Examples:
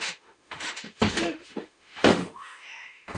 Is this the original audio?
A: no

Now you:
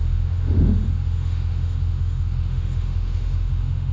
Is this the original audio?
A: no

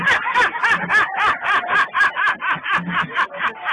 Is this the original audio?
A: yes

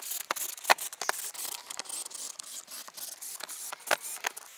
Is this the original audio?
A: yes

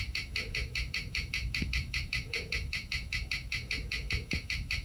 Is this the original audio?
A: no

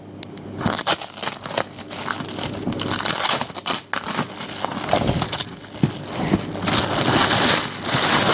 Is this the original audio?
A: yes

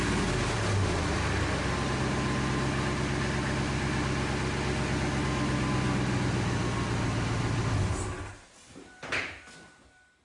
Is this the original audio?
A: yes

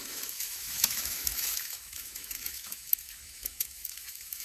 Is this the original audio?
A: no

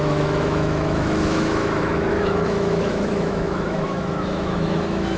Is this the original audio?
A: no